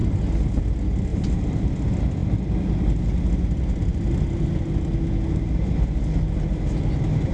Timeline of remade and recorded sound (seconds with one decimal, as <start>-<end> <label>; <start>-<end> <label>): 0.0-1.1 recorded; 1.1-1.7 remade; 1.7-7.3 recorded